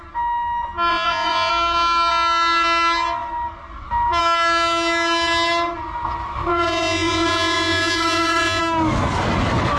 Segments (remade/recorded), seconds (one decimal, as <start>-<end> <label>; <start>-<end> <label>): 0.0-0.9 recorded; 0.9-1.5 remade; 1.5-6.5 recorded; 6.5-8.6 remade; 8.6-9.8 recorded